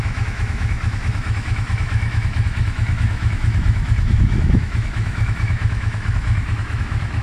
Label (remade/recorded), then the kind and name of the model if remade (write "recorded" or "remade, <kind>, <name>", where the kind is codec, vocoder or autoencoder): remade, autoencoder, DAC-VAE